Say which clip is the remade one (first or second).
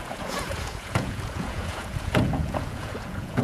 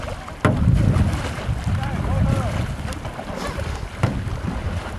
first